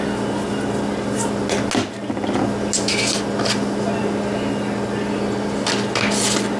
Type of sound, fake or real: real